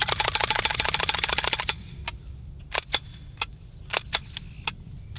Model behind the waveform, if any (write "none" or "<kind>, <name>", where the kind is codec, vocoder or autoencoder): none